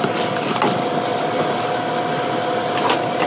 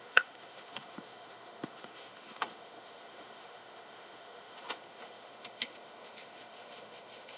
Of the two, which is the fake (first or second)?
second